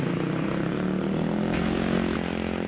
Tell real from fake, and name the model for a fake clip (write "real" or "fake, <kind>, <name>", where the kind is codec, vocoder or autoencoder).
real